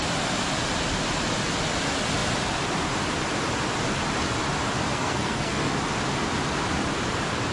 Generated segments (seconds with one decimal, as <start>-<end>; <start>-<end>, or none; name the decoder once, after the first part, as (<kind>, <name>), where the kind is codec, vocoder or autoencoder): 4.9-5.7 (codec, SNAC)